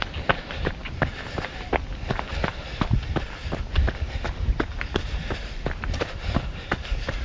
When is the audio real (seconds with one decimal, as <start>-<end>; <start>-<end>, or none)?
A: 0.0-0.8; 1.8-7.2